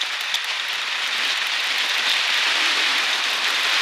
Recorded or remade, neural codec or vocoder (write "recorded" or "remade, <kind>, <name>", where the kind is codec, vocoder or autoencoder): remade, vocoder, BigVGAN v2